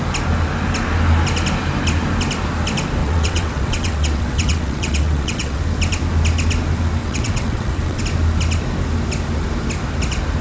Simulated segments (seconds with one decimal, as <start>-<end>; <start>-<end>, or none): 3.0-5.6; 7.0-8.0